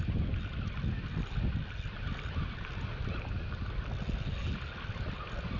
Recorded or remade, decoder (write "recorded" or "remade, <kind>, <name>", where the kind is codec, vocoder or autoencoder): recorded